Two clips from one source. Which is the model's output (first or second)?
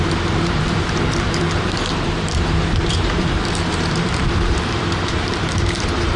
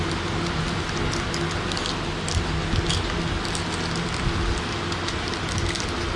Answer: first